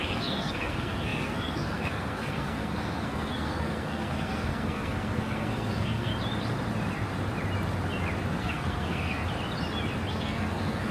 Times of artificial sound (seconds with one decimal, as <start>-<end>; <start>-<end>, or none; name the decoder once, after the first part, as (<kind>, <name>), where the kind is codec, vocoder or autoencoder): 0.0-6.1 (codec, SNAC); 8.4-9.2; 10.1-10.9